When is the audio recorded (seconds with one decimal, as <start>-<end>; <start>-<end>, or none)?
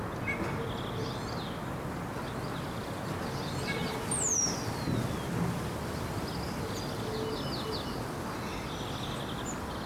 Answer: 0.0-9.9